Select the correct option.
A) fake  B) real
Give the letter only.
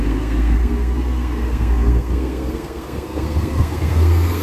A